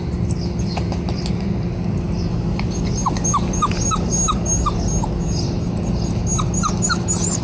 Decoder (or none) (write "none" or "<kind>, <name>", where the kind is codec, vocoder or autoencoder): none